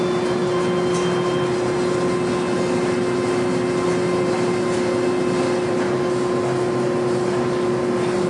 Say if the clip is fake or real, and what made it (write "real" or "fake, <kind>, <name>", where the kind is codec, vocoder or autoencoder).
real